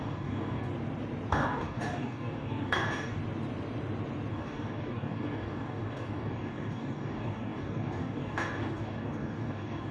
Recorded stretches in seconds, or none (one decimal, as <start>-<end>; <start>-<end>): 0.7-1.3; 3.2-4.3